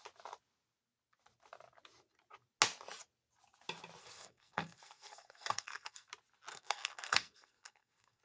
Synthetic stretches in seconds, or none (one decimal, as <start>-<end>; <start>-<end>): 4.0-6.1; 6.5-8.2